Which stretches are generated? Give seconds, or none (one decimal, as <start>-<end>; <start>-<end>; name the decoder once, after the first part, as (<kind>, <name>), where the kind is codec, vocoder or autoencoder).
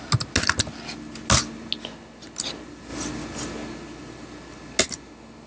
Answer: none